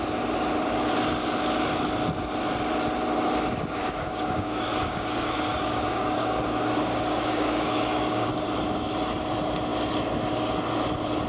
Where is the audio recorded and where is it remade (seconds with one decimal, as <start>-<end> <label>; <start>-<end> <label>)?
0.0-3.8 recorded; 3.8-8.3 remade; 8.3-11.3 recorded